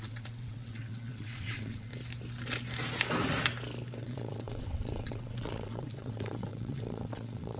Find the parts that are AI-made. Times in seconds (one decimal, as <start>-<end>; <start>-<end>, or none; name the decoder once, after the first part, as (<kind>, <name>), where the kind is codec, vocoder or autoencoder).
0.0-1.9 (vocoder, WaveNeXt); 4.0-7.6